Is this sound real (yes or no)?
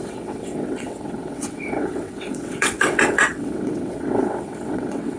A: no